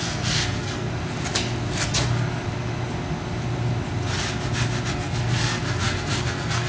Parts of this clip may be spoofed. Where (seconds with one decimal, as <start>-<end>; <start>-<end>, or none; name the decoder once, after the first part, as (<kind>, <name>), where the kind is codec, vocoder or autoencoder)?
0.0-0.9 (codec, SNAC); 4.9-6.7

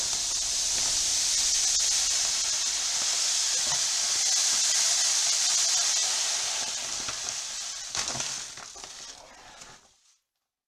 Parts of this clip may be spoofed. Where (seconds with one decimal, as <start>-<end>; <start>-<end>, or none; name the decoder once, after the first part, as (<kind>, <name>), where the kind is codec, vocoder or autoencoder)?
none

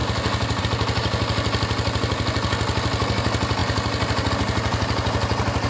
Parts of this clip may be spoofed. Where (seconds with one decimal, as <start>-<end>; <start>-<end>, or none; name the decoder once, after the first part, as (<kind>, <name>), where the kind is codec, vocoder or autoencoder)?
none